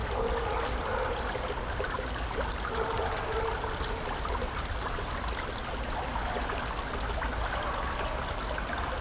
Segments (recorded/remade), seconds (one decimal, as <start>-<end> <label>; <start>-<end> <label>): 0.0-9.0 recorded